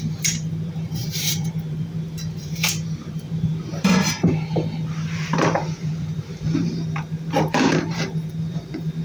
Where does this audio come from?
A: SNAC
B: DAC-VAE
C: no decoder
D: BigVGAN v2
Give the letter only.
D